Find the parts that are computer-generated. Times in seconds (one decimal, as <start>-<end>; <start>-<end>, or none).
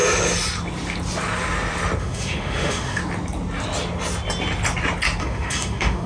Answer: 2.0-3.0; 5.2-6.1